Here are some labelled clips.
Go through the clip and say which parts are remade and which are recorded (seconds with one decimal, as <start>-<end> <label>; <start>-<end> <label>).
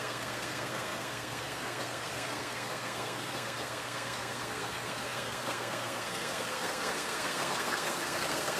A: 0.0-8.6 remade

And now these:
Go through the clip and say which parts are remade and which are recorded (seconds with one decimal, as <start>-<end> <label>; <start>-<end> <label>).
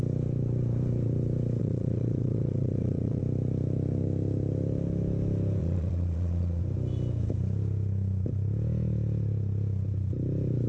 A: 0.0-1.6 recorded; 1.6-3.2 remade; 3.2-5.6 recorded; 5.6-6.6 remade; 6.6-10.7 recorded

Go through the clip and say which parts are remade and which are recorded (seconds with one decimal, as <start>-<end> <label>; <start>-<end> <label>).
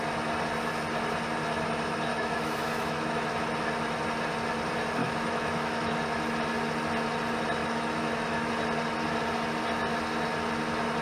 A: 0.0-2.1 recorded; 2.1-3.4 remade; 3.4-5.0 recorded; 5.0-6.0 remade; 6.0-7.6 recorded; 7.6-8.5 remade; 8.5-11.0 recorded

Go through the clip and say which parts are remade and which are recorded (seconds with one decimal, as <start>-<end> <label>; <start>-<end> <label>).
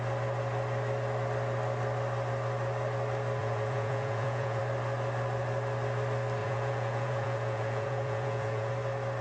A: 0.0-3.4 recorded; 3.4-4.6 remade; 4.6-6.4 recorded; 6.4-8.7 remade; 8.7-9.2 recorded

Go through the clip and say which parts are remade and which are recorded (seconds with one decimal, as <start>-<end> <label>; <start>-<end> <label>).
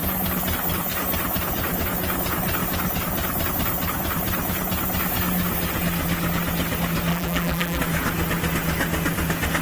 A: 0.0-7.1 recorded; 7.1-7.8 remade; 7.8-9.6 recorded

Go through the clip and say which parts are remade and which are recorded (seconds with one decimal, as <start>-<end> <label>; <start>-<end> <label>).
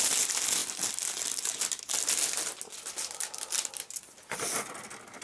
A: 0.0-5.2 recorded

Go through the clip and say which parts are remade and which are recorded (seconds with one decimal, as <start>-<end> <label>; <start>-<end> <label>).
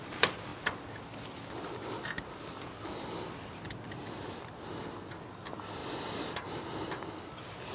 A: 0.0-7.7 recorded